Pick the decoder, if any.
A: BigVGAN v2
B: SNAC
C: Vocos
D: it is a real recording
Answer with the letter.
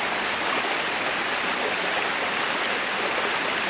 D